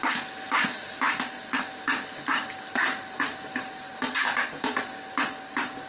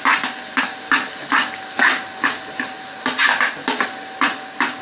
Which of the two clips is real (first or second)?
second